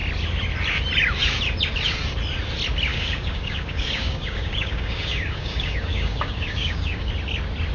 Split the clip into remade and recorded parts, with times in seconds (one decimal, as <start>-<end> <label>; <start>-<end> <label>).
0.0-2.9 recorded; 2.9-7.1 remade; 7.1-7.7 recorded